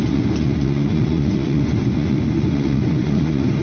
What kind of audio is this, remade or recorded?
remade